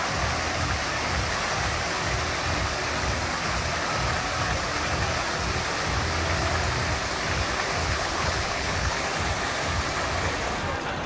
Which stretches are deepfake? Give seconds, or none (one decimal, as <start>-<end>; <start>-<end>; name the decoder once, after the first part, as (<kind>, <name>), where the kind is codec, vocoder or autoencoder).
7.8-9.0 (codec, HILCodec)